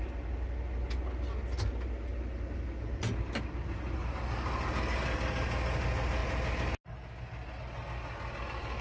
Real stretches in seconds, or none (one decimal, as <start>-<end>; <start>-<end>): 0.0-8.8